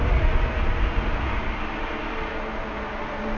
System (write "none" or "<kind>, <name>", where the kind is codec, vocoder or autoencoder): none